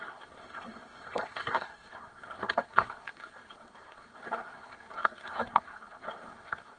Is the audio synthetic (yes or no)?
yes